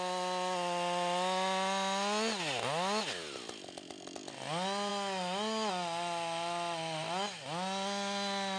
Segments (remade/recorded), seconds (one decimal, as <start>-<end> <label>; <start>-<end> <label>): 0.0-8.6 recorded